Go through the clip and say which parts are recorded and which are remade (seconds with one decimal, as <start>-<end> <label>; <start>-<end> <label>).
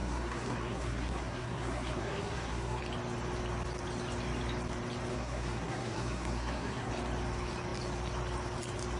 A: 0.0-2.8 remade; 2.8-5.1 recorded; 5.1-6.9 remade; 6.9-9.0 recorded